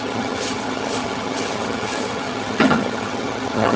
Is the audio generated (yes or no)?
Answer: yes